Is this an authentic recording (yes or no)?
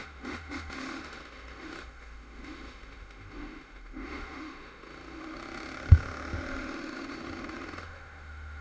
no